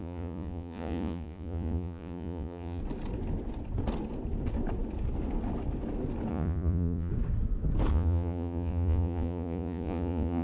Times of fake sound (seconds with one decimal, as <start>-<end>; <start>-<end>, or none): 0.0-2.8; 6.3-7.1; 7.9-10.4